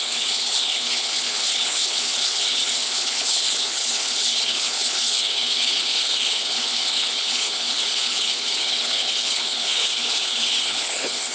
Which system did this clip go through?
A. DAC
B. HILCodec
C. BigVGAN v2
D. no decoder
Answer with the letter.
B